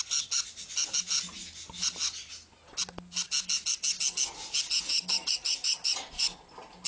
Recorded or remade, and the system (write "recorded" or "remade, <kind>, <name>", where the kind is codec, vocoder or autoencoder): recorded